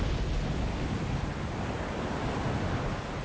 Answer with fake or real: real